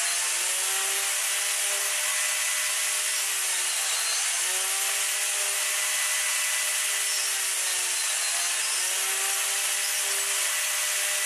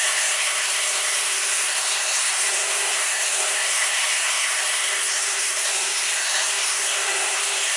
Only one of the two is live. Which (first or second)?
first